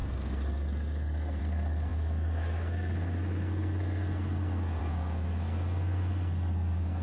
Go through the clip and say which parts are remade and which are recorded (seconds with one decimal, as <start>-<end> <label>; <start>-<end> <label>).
0.0-7.0 remade